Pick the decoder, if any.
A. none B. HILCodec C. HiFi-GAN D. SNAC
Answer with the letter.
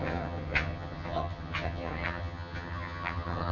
C